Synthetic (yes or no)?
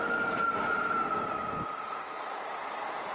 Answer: no